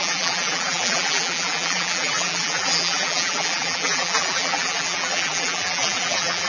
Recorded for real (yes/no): no